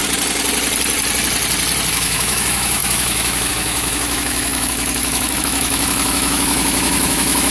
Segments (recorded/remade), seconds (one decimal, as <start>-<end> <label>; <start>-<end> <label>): 0.0-1.9 recorded; 1.9-7.5 remade